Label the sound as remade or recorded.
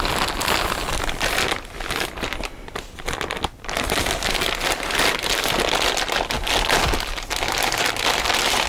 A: recorded